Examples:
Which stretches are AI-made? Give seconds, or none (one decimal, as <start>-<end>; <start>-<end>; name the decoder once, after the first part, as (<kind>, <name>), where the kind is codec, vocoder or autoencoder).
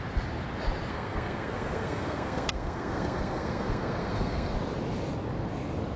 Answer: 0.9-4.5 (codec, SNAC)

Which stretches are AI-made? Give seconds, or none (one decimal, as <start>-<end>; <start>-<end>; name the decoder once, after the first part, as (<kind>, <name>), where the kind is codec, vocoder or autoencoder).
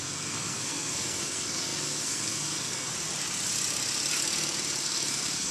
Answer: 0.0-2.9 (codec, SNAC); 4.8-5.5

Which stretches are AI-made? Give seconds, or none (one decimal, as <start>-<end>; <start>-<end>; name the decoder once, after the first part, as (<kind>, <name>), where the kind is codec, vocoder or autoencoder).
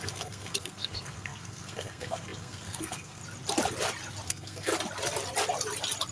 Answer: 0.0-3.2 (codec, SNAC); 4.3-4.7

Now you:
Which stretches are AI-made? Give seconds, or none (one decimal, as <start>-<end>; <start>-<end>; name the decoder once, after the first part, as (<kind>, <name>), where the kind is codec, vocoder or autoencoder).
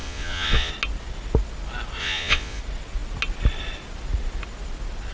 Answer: 0.0-0.7 (vocoder, Vocos); 2.0-2.6